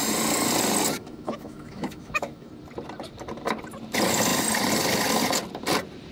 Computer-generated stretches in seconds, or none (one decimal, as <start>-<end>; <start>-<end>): 1.0-2.5